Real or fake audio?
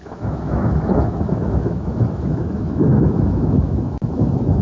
fake